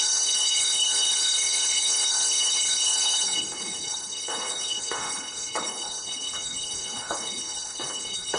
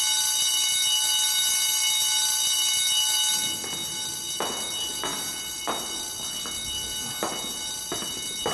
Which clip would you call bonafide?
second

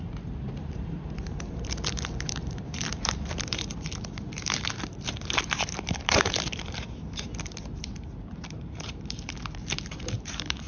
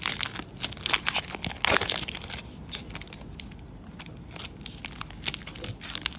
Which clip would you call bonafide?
second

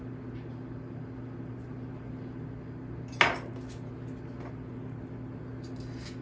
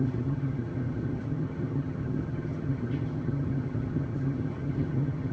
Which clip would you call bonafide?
first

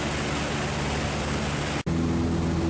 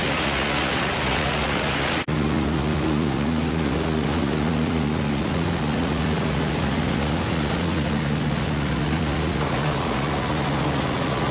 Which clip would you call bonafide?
first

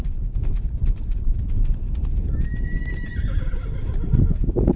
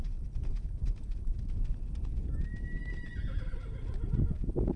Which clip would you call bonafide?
second